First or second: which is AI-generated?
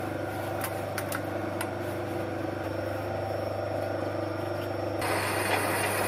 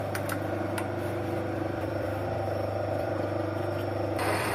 second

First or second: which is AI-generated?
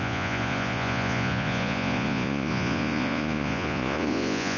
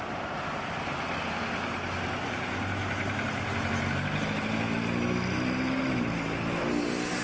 first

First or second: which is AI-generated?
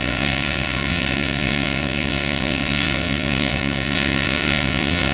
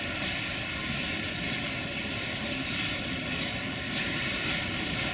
first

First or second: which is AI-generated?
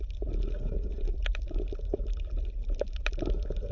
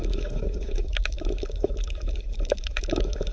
second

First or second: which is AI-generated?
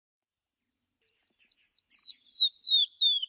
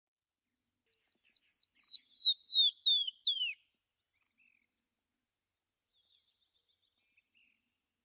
first